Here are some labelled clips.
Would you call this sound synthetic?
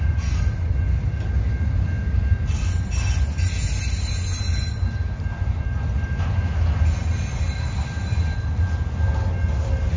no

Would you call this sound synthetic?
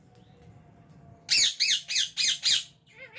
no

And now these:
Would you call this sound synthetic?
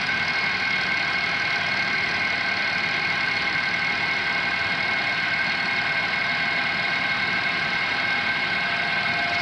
no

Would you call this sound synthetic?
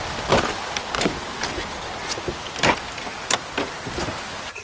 no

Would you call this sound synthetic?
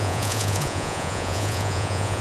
yes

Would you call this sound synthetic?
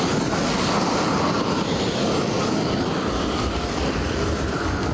no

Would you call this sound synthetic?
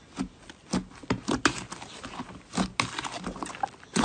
no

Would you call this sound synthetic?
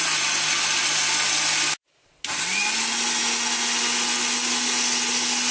no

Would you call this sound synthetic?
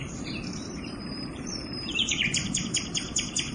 yes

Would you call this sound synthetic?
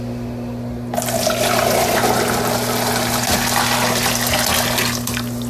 no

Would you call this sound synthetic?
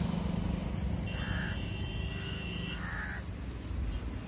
no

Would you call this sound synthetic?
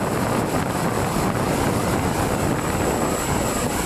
no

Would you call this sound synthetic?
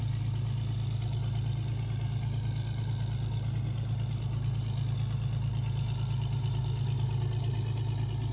no